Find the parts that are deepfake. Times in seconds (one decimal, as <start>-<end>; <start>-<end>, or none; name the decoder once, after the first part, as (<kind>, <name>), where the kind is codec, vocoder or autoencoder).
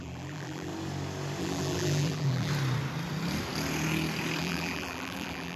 0.0-0.7 (vocoder, BigVGAN v2); 1.4-2.5; 4.4-5.6